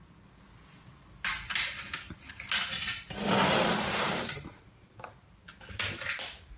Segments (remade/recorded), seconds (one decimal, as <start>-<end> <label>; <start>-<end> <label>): 0.0-6.6 recorded